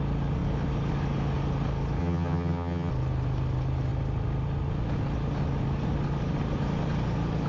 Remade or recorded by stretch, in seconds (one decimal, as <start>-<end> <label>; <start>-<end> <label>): 0.0-2.0 recorded; 2.0-2.9 remade; 2.9-7.5 recorded